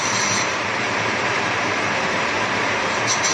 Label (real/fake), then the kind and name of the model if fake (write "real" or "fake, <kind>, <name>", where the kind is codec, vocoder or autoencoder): fake, vocoder, BigVGAN v2